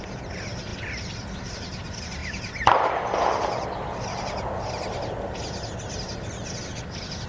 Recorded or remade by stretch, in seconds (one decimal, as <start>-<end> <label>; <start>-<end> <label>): 0.0-7.3 recorded